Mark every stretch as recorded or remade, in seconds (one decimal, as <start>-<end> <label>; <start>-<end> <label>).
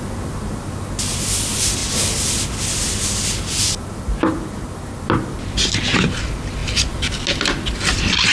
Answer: 0.0-8.3 recorded